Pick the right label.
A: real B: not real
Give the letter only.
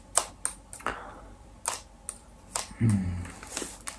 A